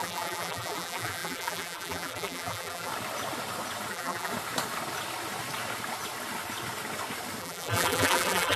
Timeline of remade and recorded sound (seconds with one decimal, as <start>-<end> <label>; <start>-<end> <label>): 0.0-2.9 remade; 2.9-3.9 recorded; 3.9-4.3 remade; 4.3-7.4 recorded; 7.4-8.6 remade